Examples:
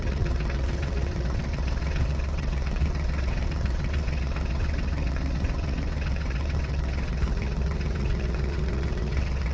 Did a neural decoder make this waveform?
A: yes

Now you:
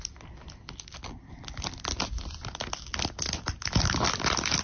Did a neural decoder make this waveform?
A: no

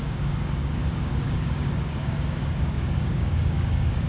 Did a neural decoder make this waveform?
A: yes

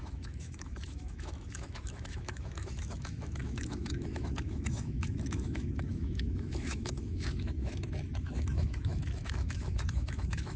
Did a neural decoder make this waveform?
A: yes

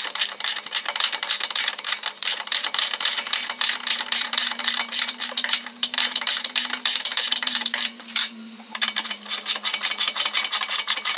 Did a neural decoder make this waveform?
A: yes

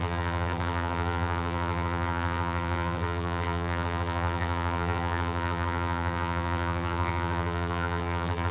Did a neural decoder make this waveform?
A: yes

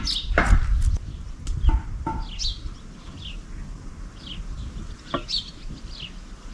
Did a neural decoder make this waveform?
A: no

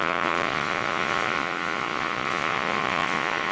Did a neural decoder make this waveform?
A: yes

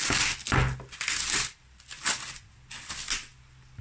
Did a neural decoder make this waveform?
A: no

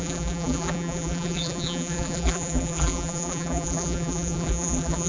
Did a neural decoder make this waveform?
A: yes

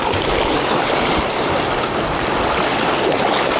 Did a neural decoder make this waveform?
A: no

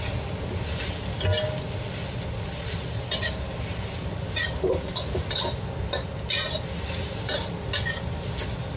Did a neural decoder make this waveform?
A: no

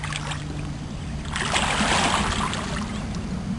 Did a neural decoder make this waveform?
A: no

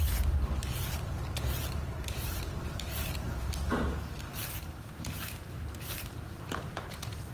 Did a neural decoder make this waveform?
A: yes